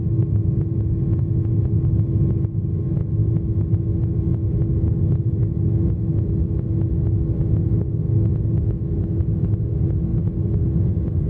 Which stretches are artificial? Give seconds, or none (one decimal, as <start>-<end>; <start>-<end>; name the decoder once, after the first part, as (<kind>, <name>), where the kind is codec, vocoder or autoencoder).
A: 10.1-10.9 (vocoder, BigVGAN v2)